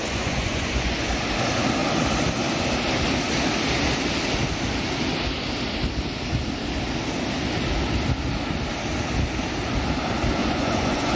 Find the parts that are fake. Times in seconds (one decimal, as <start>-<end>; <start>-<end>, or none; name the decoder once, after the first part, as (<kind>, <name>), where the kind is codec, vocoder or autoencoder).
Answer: 0.0-1.1 (vocoder, Vocos); 10.4-11.2